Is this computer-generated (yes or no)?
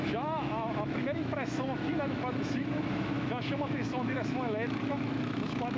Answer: yes